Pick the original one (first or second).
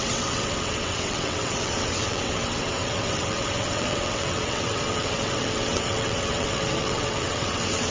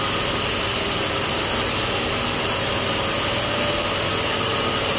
second